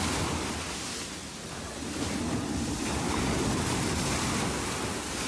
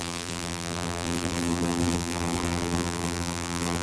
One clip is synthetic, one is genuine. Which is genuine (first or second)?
first